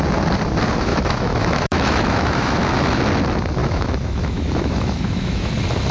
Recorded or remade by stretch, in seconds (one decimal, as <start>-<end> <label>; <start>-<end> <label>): 0.0-0.9 recorded; 0.9-3.0 remade; 3.0-3.6 recorded; 3.6-5.5 remade; 5.5-5.9 recorded